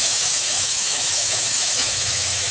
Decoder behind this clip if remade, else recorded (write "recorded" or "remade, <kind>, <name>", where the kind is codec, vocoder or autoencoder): remade, autoencoder, DAC-VAE